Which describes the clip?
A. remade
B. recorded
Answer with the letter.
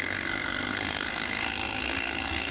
A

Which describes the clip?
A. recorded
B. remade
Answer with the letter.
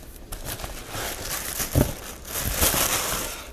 A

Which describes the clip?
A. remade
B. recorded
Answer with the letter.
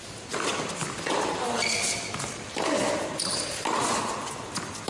B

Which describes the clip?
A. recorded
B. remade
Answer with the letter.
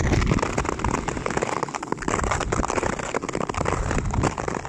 A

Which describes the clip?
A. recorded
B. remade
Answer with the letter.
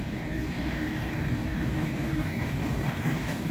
B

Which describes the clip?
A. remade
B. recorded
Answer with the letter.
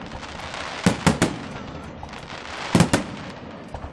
B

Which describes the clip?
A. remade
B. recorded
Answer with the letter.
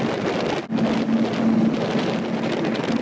B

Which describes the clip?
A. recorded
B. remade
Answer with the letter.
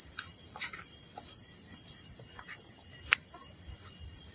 A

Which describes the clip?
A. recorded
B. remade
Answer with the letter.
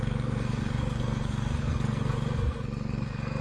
B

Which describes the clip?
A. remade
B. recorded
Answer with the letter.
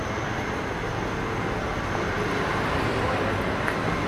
B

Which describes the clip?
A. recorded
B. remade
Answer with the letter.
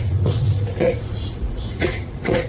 B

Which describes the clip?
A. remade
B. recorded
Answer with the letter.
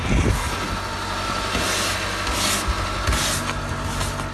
B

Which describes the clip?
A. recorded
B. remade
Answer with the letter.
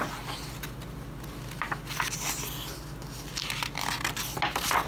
A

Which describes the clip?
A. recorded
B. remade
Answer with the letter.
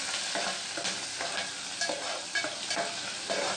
A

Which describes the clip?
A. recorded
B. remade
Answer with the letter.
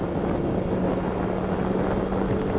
A